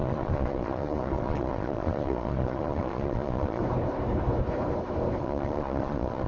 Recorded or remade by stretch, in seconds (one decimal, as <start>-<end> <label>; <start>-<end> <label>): 0.0-3.6 remade; 3.6-5.2 recorded; 5.2-6.3 remade